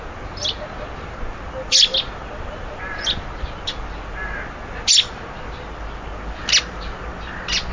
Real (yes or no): yes